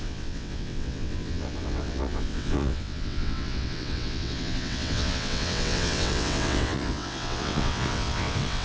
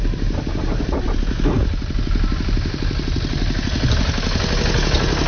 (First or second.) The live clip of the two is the second